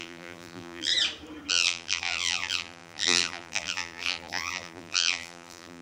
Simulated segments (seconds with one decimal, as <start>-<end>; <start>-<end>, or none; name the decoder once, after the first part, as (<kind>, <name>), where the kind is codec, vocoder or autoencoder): 0.0-0.9 (vocoder, BigVGAN v2); 1.5-5.8